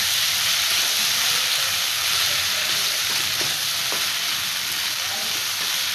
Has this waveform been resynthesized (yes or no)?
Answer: yes